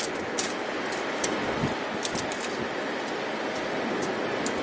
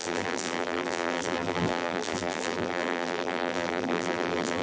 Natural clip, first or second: first